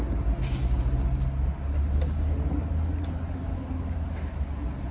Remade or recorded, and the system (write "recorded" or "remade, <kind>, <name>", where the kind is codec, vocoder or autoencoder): recorded